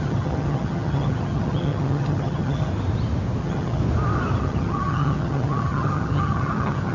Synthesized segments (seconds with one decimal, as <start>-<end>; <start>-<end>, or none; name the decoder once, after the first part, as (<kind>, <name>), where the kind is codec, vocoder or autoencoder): 0.0-2.7 (vocoder, HiFi-GAN); 3.4-3.8; 4.4-6.9